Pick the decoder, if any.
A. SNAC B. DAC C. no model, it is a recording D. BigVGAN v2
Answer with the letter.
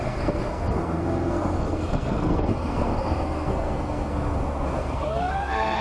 A